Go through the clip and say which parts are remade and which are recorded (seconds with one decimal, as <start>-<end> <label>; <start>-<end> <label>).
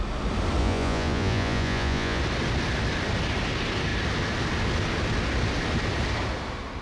0.0-0.6 recorded; 0.6-2.2 remade; 2.2-6.8 recorded